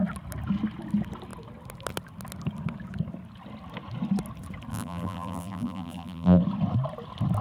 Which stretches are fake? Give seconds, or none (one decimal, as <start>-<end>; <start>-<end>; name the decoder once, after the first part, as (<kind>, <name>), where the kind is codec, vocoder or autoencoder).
4.7-6.4 (vocoder, BigVGAN v2)